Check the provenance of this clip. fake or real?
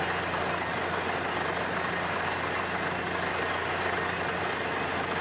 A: real